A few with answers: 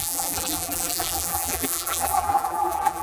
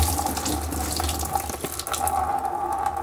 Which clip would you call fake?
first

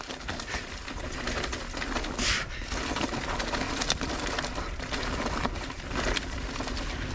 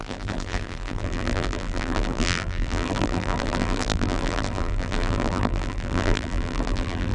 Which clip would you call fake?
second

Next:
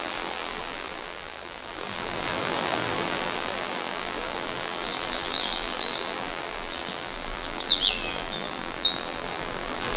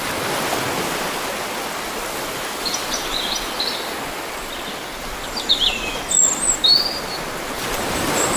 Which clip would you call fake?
first